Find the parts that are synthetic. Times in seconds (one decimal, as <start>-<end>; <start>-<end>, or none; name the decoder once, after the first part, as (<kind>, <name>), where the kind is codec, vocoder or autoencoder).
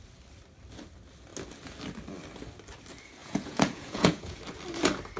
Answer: 3.2-4.4 (vocoder, Vocos)